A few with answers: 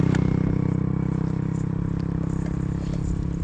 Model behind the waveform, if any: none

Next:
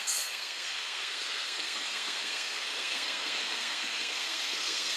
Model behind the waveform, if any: codec, SNAC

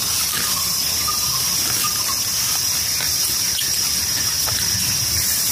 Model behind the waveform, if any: none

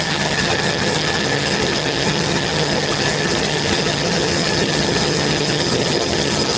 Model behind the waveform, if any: vocoder, HiFi-GAN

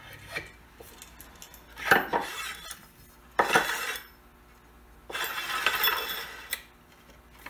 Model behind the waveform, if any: none